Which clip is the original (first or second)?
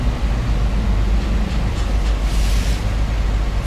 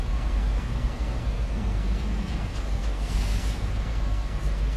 first